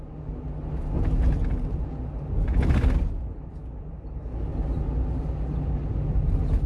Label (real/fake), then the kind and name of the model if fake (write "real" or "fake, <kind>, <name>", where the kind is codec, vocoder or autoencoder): real